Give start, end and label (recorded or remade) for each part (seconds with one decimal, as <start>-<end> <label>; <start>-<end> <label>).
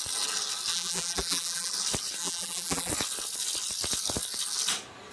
0.0-0.7 recorded; 0.7-1.7 remade; 1.7-2.2 recorded; 2.2-2.9 remade; 2.9-5.1 recorded